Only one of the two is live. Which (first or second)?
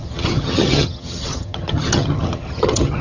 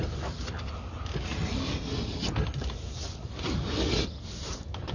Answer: second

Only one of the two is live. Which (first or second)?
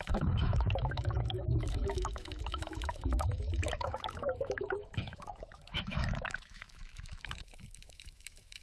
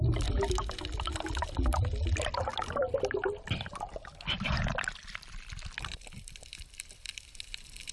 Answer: second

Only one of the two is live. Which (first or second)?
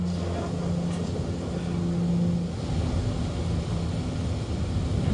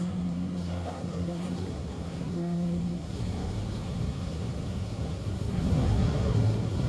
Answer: first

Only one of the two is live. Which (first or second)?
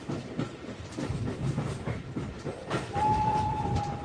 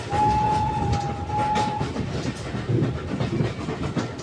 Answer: second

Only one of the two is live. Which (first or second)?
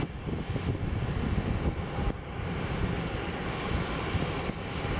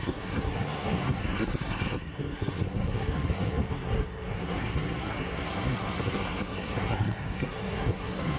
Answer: first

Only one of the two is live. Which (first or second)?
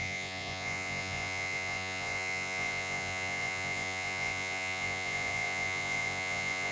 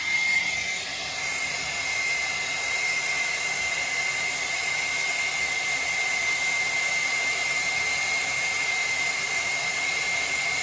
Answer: second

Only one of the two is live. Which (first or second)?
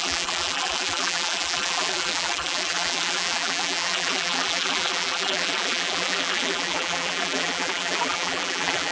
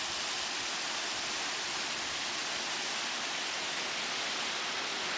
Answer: second